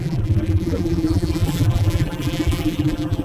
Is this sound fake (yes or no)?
yes